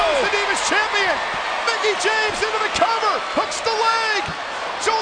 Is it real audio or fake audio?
real